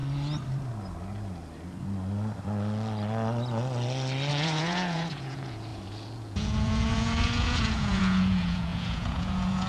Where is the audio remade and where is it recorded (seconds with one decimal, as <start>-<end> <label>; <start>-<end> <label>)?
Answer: 0.0-4.3 recorded; 4.3-9.7 remade